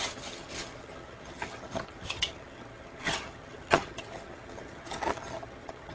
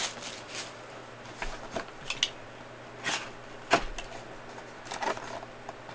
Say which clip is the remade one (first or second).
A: first